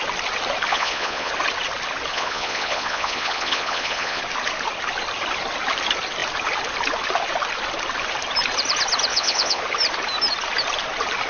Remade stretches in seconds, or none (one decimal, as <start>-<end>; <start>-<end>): 0.7-1.3; 2.1-4.2; 9.1-9.6